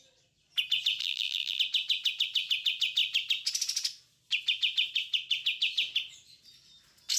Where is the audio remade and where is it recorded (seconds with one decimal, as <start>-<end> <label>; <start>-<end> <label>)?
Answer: 0.0-1.0 recorded; 1.0-1.6 remade; 1.6-7.2 recorded